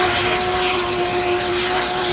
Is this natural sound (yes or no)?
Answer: yes